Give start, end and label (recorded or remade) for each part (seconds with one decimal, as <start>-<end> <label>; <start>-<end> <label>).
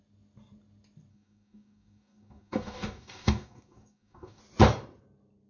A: 0.0-1.1 recorded; 1.1-4.4 remade; 4.4-5.5 recorded